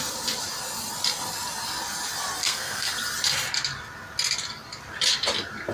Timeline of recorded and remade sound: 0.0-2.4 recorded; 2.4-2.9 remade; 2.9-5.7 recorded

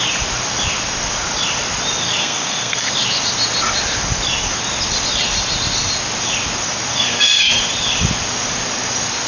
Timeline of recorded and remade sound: 0.0-2.2 recorded; 2.2-2.9 remade; 2.9-6.9 recorded; 6.9-7.6 remade; 7.6-9.3 recorded

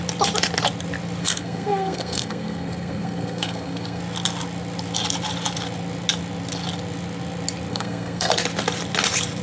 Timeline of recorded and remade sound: 0.0-1.2 recorded; 1.2-4.0 remade; 4.0-7.7 recorded; 7.7-8.3 remade; 8.3-9.4 recorded

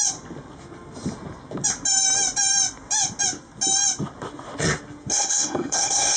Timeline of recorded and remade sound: 0.0-5.1 recorded; 5.1-6.2 remade

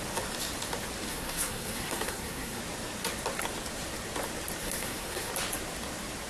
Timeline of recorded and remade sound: 0.0-1.1 recorded; 1.1-2.6 remade; 2.6-4.6 recorded; 4.6-5.3 remade; 5.3-6.3 recorded

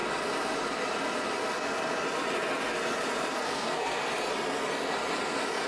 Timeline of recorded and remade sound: 0.0-3.3 recorded; 3.3-4.0 remade; 4.0-5.7 recorded

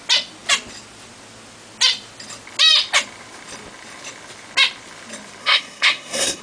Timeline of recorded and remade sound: 0.0-5.4 recorded; 5.4-6.4 remade

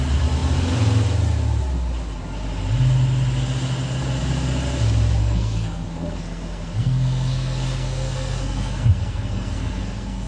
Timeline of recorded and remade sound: 0.0-5.2 recorded; 5.2-10.3 remade